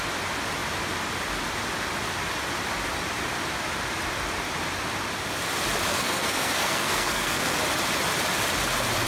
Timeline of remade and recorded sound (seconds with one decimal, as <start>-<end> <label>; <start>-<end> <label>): 0.0-5.9 recorded; 5.9-7.6 remade; 7.6-9.1 recorded